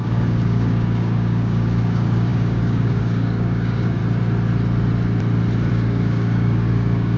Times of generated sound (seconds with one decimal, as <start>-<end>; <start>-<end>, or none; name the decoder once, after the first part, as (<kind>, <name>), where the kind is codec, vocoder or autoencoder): 0.0-4.0 (codec, DAC); 5.7-7.2